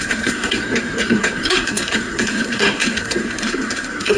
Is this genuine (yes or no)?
no